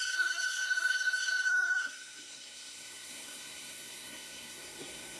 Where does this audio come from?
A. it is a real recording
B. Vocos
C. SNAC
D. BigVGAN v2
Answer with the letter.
C